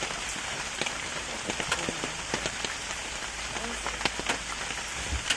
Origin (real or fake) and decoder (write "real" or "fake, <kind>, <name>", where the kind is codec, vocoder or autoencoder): fake, vocoder, BigVGAN v2